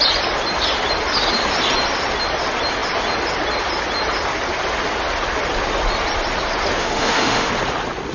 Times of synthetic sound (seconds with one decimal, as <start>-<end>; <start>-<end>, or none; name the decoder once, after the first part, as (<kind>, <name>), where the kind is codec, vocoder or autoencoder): 6.8-7.5 (autoencoder, DAC-VAE)